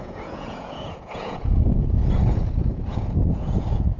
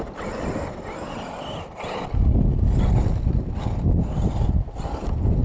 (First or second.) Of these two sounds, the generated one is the first